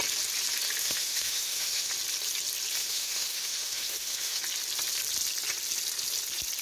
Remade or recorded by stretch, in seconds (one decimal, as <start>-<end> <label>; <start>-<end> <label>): 0.0-0.8 recorded; 0.8-1.9 remade; 1.9-2.8 recorded; 2.8-4.4 remade; 4.4-6.6 recorded